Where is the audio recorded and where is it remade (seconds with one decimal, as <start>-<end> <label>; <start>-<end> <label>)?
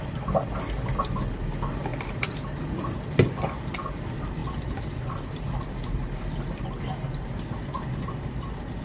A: 0.0-1.9 recorded; 1.9-2.6 remade; 2.6-8.8 recorded